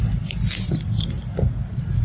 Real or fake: real